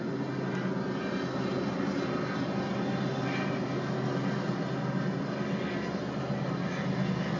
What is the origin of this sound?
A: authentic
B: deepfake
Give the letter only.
A